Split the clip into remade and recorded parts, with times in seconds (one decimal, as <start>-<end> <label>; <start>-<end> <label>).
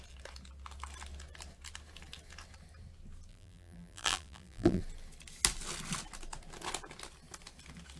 0.0-3.3 recorded; 3.3-4.8 remade; 4.8-8.0 recorded